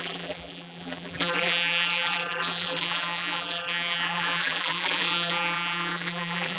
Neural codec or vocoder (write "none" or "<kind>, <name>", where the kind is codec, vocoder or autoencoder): vocoder, BigVGAN v2